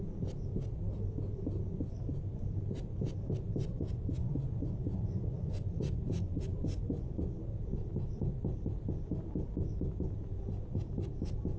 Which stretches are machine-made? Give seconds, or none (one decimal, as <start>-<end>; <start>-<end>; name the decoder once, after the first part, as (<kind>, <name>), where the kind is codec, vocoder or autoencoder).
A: 3.7-7.4 (vocoder, Vocos)